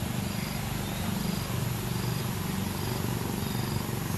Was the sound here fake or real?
real